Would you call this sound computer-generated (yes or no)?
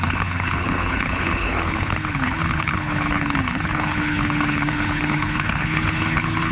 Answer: yes